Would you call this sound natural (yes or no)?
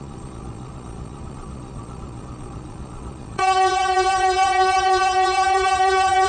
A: no